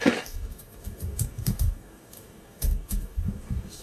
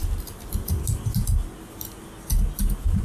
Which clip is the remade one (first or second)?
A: first